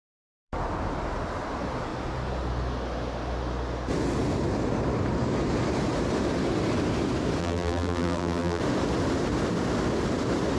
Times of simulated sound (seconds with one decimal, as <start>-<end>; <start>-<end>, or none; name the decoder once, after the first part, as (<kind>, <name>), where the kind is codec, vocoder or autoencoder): 7.4-8.6 (vocoder, BigVGAN v2)